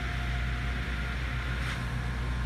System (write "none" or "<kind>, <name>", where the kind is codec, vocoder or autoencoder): none